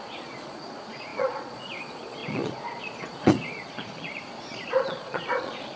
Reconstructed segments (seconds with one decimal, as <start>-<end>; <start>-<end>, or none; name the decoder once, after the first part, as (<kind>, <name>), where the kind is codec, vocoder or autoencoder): 0.0-5.8 (vocoder, Vocos)